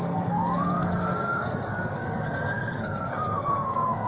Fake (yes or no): yes